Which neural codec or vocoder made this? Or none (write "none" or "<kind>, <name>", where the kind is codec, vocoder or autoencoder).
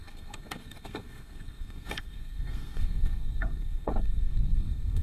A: codec, SNAC